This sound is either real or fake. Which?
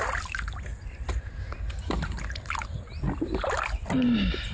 real